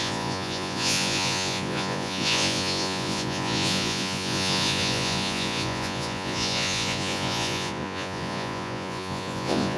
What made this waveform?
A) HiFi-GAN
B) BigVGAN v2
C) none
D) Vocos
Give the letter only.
D